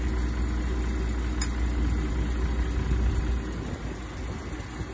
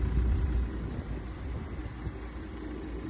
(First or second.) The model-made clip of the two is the second